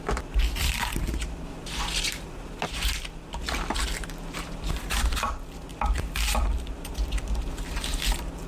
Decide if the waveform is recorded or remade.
recorded